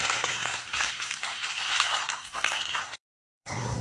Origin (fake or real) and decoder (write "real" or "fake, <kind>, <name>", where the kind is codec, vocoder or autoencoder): fake, codec, SNAC